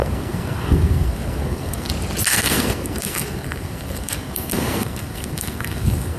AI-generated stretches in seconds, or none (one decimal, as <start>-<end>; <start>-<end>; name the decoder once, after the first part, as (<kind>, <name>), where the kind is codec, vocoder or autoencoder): 0.0-1.9 (codec, SNAC); 2.3-6.2